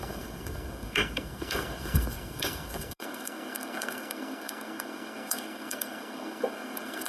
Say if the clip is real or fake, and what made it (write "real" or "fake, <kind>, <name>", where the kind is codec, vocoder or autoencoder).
fake, codec, SNAC